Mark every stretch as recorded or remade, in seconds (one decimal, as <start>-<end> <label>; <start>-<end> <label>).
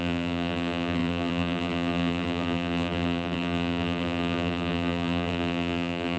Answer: 0.0-6.2 remade